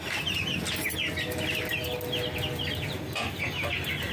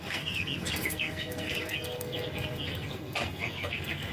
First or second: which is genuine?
first